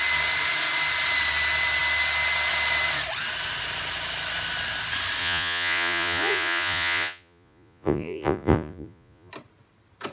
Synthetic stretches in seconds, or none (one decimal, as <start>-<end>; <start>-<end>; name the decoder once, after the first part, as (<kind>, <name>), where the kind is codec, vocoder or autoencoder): 5.2-9.3 (vocoder, Vocos)